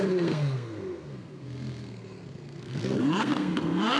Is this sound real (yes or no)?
no